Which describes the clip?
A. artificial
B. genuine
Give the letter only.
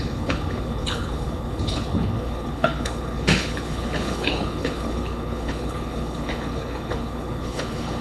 A